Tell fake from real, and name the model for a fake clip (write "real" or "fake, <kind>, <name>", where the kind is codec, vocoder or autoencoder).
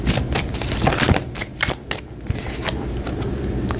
real